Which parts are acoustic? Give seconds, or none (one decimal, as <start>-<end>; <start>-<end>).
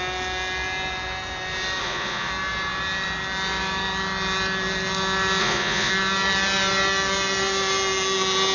0.0-1.8; 2.3-5.4; 5.9-8.5